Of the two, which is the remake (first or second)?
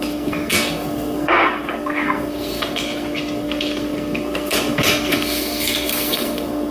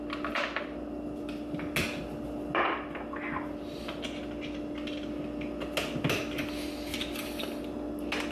first